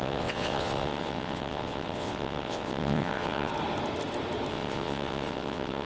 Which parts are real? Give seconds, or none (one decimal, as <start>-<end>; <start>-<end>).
3.5-4.5